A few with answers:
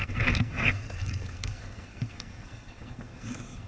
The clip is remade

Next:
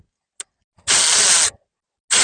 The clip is recorded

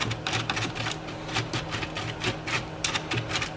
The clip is remade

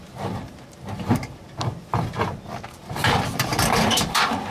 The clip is remade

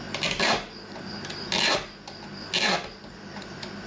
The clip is recorded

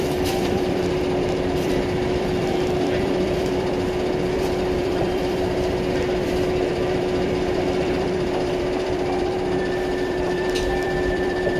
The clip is remade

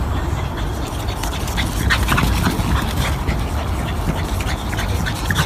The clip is recorded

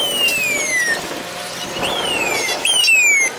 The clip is recorded